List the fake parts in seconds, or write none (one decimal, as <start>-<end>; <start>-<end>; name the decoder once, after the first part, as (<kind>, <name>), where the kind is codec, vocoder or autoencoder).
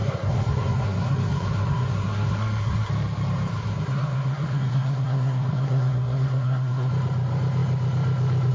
0.0-2.9 (codec, SNAC); 3.5-6.9